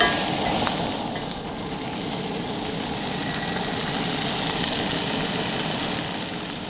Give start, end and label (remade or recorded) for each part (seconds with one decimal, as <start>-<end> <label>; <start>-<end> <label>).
0.0-6.7 recorded